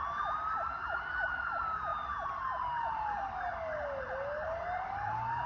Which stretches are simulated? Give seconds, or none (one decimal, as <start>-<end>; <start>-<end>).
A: none